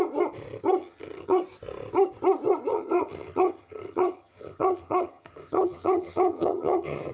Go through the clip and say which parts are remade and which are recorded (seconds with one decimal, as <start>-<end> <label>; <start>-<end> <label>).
0.0-0.8 recorded; 0.8-1.4 remade; 1.4-2.7 recorded; 2.7-7.1 remade